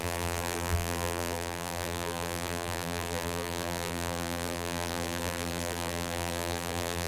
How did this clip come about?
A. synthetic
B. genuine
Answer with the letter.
A